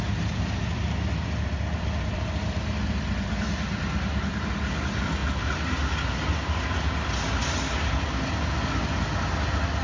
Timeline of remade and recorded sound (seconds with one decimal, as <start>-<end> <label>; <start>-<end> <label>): 0.0-0.6 recorded; 0.6-2.4 remade; 2.4-9.8 recorded